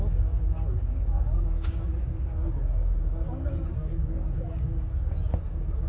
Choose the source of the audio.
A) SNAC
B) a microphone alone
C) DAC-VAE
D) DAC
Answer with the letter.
D